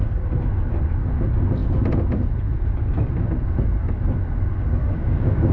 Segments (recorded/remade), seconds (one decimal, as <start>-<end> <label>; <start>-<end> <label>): 0.0-4.8 recorded; 4.8-5.5 remade